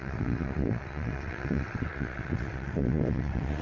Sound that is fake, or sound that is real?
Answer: fake